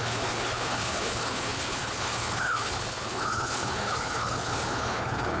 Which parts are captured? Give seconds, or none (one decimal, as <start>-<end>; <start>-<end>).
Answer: none